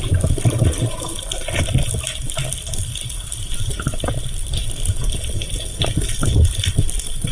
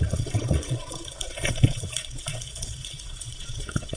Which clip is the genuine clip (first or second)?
first